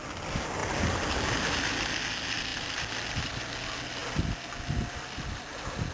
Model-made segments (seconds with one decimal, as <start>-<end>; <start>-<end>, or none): none